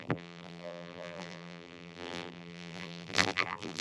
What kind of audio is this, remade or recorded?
remade